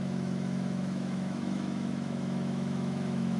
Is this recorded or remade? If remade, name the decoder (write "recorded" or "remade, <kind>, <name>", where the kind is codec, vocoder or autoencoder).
remade, autoencoder, DAC-VAE